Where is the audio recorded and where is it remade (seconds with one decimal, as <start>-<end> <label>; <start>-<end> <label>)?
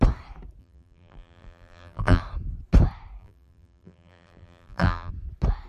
0.0-0.6 recorded; 0.6-2.2 remade; 2.2-3.2 recorded; 3.2-5.1 remade; 5.1-5.7 recorded